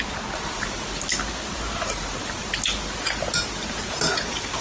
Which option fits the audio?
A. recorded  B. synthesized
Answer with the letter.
A